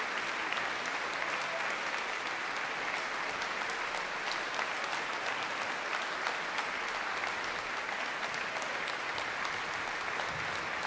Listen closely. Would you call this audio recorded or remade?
recorded